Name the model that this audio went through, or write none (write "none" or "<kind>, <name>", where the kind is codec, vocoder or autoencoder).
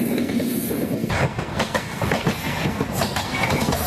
codec, SNAC